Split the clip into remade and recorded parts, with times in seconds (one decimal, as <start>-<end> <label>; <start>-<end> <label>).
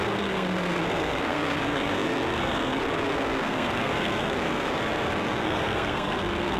0.0-6.6 remade